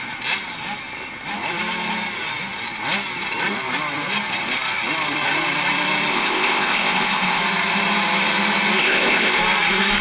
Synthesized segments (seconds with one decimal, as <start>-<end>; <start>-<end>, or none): 6.1-7.4; 8.8-9.4